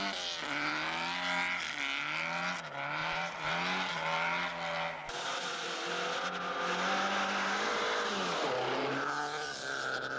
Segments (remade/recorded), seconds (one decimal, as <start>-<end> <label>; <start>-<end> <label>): 0.0-3.0 recorded; 3.0-3.5 remade; 3.5-5.0 recorded; 5.0-6.1 remade; 6.1-10.2 recorded